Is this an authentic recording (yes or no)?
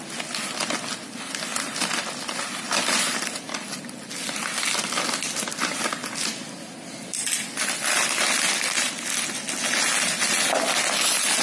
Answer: yes